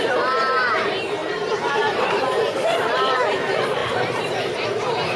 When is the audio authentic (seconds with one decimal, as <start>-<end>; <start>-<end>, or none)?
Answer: none